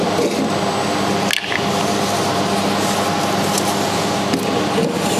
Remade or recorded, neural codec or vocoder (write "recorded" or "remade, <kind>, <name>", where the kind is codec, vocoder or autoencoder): recorded